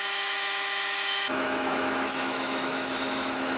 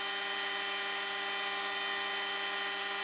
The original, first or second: second